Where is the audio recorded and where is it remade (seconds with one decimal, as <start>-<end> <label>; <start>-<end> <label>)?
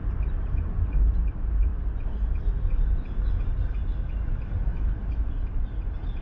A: 0.0-6.2 recorded